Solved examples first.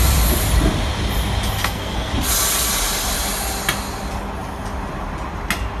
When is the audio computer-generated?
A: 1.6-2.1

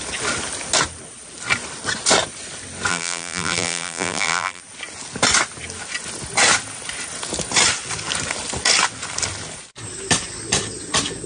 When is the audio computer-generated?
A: 2.9-4.6